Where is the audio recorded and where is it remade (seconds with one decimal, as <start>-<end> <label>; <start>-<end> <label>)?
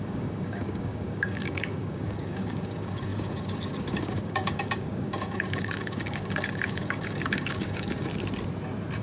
0.0-8.1 remade; 8.1-9.0 recorded